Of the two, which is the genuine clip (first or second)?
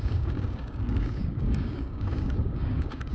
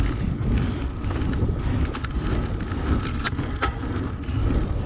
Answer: second